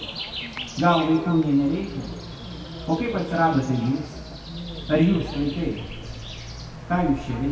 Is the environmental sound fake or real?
real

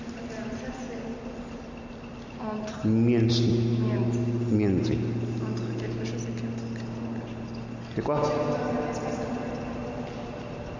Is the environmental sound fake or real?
real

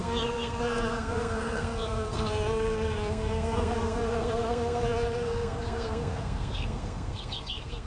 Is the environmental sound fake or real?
fake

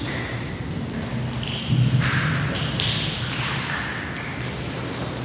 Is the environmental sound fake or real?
real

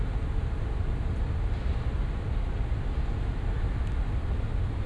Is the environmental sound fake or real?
real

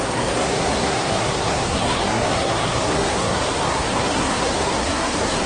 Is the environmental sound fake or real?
fake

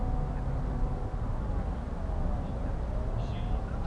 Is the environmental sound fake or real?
real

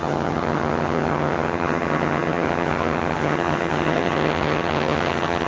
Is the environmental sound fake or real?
fake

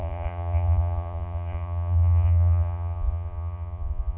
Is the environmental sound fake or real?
fake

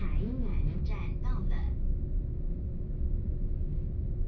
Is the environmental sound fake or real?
real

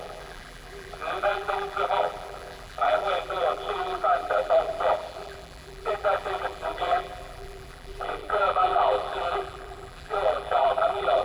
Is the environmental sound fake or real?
fake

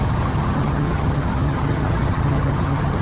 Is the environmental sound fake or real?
fake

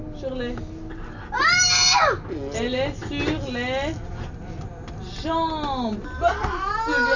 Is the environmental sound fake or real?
real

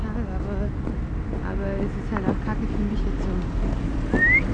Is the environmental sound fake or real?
real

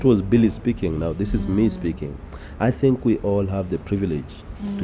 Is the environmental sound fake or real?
real